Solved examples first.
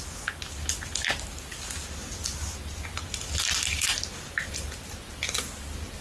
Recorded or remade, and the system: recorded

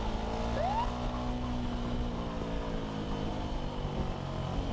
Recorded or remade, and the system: recorded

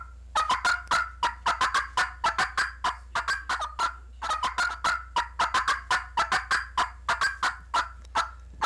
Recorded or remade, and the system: recorded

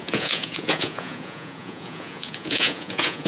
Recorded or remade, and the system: remade, vocoder, Vocos